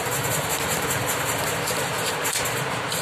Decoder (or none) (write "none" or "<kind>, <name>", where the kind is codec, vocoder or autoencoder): none